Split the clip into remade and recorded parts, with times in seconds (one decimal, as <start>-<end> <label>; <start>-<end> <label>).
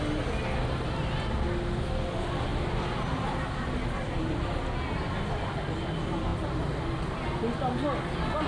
0.0-8.5 recorded